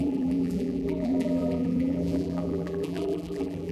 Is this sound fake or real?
fake